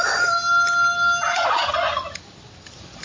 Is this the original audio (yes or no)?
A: yes